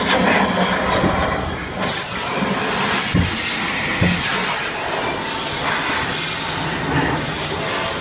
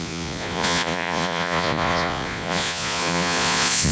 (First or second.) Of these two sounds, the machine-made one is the second